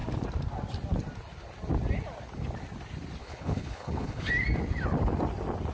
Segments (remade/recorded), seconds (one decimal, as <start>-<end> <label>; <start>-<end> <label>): 0.0-3.2 recorded; 3.2-4.3 remade; 4.3-5.7 recorded